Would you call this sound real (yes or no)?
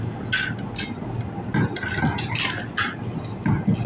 yes